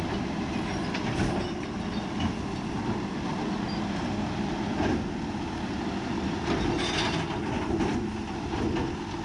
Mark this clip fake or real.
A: real